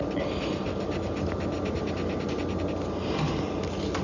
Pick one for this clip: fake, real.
real